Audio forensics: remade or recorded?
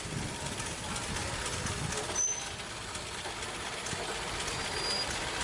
recorded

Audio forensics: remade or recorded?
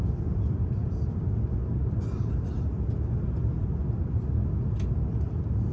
recorded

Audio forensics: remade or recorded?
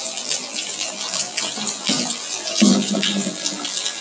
remade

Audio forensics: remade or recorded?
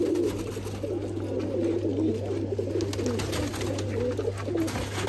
recorded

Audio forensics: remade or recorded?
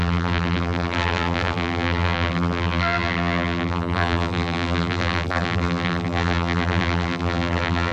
remade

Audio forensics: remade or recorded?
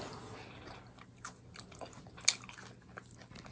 recorded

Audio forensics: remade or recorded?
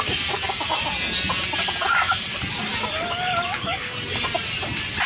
remade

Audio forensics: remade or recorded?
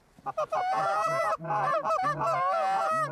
recorded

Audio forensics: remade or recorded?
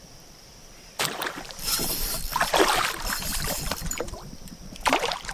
remade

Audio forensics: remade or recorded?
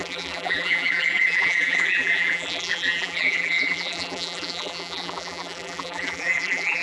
remade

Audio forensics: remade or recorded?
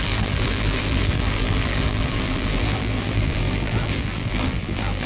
remade